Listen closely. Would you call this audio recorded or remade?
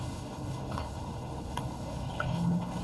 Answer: remade